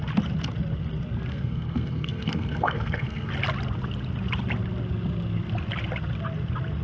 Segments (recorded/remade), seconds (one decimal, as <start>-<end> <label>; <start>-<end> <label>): 0.0-1.3 recorded; 1.3-3.3 remade; 3.3-6.8 recorded